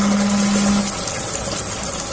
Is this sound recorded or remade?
recorded